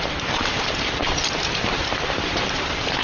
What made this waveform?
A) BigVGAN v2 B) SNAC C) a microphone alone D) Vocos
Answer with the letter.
A